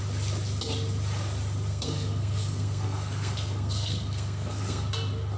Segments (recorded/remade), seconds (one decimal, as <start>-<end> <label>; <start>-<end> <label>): 0.0-1.7 recorded; 1.7-4.9 remade; 4.9-5.4 recorded